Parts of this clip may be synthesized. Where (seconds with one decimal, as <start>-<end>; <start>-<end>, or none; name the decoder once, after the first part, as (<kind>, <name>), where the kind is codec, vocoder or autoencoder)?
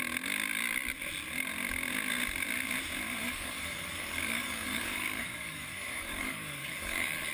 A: 3.2-7.3 (codec, DAC)